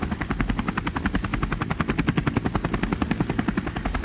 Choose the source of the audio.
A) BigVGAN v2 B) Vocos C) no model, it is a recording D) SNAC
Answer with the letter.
C